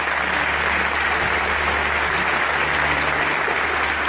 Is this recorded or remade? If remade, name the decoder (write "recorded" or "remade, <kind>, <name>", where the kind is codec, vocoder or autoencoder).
recorded